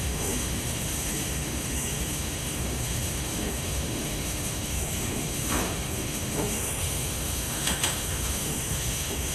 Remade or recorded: remade